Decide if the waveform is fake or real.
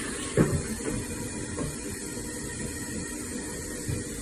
real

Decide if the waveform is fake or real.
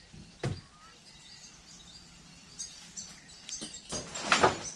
real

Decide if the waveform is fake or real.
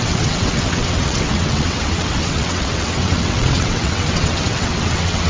fake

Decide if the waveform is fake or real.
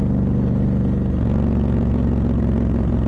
real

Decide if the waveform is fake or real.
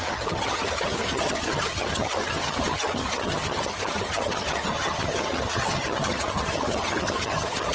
fake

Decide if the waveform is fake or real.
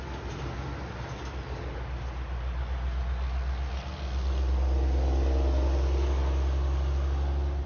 real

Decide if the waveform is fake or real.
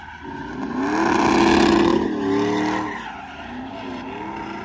real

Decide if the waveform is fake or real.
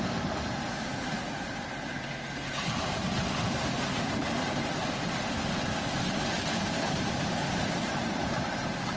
fake